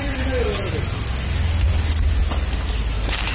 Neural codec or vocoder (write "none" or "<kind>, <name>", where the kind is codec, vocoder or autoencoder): none